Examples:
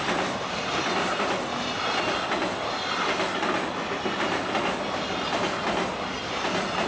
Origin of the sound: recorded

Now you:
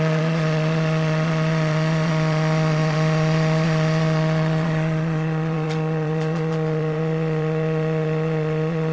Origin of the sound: remade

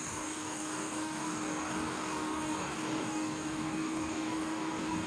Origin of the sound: remade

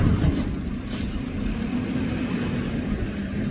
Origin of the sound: remade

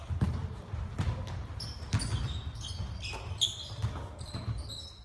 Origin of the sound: recorded